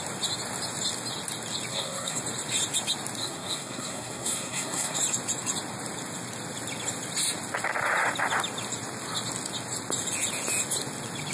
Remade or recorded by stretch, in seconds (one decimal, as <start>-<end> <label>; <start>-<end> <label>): 0.0-1.7 recorded; 1.7-2.2 remade; 2.2-3.2 recorded; 3.2-5.0 remade; 5.0-11.3 recorded